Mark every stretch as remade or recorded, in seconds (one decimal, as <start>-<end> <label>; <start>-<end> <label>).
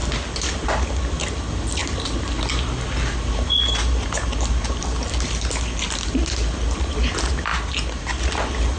0.0-8.8 recorded